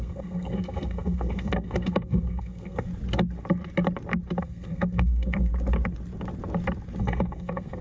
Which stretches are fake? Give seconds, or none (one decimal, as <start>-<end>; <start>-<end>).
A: 0.0-2.9; 4.4-5.5; 7.0-7.8

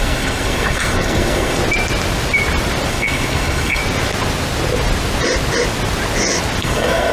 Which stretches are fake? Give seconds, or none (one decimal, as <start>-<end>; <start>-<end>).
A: 0.0-1.6; 2.9-3.8; 6.6-7.1